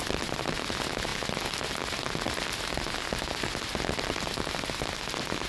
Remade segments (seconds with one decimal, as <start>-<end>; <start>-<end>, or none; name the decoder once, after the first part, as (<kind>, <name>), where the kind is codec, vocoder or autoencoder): none